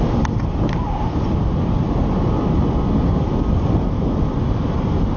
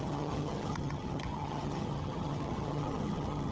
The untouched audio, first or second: first